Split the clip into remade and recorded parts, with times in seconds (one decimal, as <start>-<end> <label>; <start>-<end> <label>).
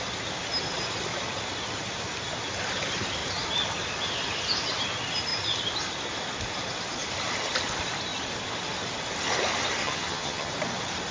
0.0-9.8 recorded; 9.8-10.5 remade; 10.5-11.1 recorded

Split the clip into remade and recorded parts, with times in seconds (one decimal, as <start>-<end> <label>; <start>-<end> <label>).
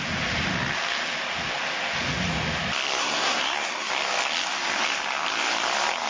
0.0-3.0 recorded; 3.0-3.9 remade; 3.9-6.1 recorded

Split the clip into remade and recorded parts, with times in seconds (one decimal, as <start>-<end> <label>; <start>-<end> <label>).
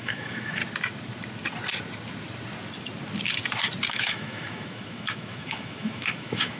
0.0-0.6 remade; 0.6-3.9 recorded; 3.9-6.6 remade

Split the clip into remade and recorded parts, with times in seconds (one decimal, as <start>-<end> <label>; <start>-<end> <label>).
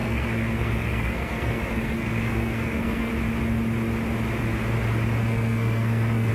0.0-3.1 remade; 3.1-5.2 recorded; 5.2-6.3 remade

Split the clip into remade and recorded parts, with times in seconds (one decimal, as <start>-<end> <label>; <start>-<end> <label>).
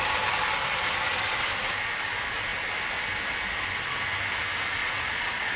0.0-4.8 recorded; 4.8-5.6 remade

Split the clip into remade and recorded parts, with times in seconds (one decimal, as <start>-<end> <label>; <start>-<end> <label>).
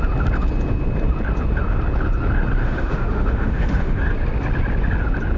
0.0-2.6 recorded; 2.6-4.0 remade; 4.0-5.4 recorded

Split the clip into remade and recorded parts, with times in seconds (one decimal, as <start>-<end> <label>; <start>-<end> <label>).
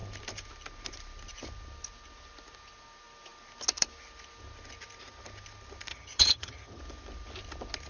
0.0-5.9 recorded; 5.9-6.8 remade; 6.8-7.9 recorded